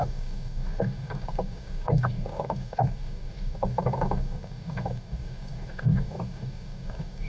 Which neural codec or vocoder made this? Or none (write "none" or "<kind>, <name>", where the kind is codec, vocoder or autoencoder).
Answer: codec, DAC